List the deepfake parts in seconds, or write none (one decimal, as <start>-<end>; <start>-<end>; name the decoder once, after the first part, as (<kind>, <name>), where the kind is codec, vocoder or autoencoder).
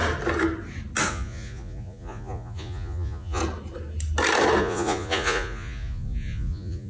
1.1-3.4 (vocoder, Vocos); 4.6-6.9